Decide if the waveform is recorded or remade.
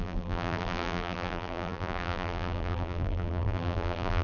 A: remade